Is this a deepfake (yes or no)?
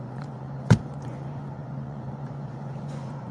yes